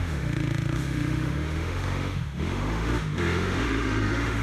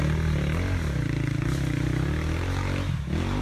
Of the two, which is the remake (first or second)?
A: first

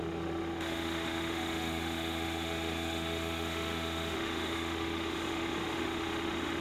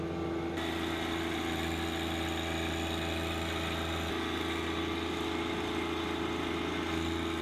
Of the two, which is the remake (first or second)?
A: first